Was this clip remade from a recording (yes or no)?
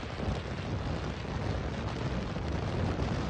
no